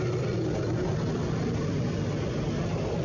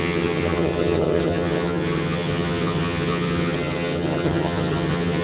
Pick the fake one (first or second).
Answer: second